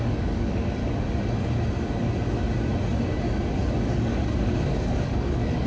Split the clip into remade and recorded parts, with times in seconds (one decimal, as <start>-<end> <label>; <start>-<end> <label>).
0.0-0.8 remade; 0.8-3.8 recorded; 3.8-5.7 remade